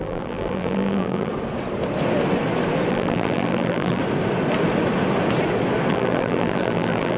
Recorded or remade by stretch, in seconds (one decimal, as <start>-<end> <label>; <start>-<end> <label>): 0.0-1.3 remade; 1.3-2.9 recorded; 2.9-4.0 remade; 4.0-5.9 recorded; 5.9-7.2 remade